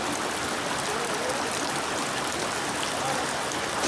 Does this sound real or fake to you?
real